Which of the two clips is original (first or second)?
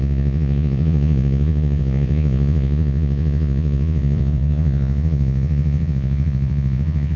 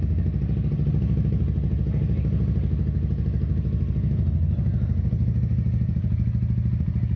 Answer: second